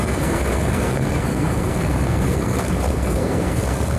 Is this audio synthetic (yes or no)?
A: yes